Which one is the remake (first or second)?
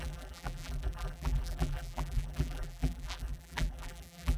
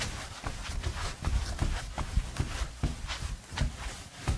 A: first